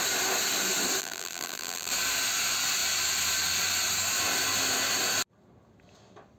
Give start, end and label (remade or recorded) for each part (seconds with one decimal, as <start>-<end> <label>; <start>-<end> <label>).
0.0-1.0 recorded; 1.0-1.9 remade; 1.9-6.4 recorded